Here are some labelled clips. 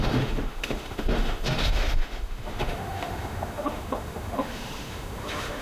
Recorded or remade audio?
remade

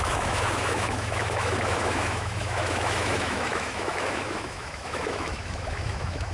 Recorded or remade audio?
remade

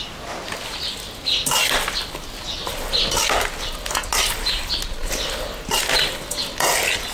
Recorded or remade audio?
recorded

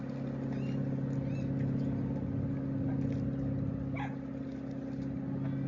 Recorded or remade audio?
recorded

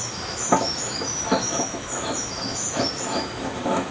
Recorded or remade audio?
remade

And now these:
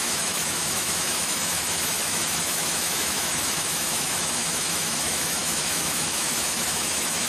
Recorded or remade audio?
remade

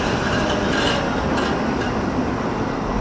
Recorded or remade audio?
recorded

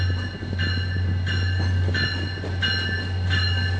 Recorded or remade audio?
recorded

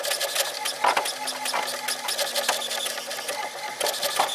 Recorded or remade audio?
recorded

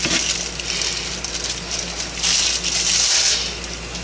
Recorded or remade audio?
recorded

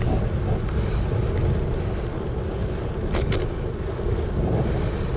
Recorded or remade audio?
recorded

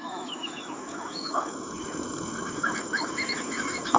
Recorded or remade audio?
remade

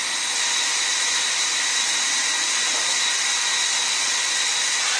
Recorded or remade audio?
recorded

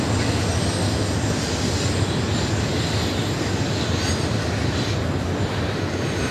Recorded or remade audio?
recorded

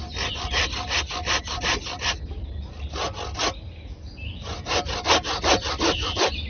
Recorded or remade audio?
recorded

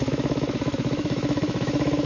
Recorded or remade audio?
remade